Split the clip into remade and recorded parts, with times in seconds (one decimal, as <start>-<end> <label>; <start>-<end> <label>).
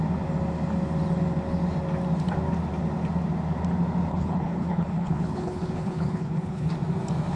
0.0-4.1 recorded; 4.1-6.7 remade; 6.7-7.4 recorded